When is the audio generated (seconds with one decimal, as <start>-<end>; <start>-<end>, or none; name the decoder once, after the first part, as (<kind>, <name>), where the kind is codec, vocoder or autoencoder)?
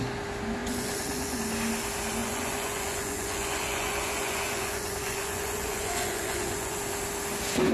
0.6-1.4 (vocoder, Vocos); 2.2-6.8